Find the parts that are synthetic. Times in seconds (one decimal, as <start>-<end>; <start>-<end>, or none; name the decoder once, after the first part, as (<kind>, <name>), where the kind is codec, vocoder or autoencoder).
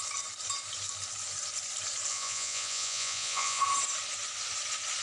2.1-3.6 (vocoder, Vocos)